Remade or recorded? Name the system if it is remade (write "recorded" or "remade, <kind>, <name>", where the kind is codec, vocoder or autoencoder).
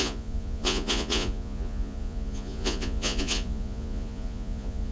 remade, vocoder, Vocos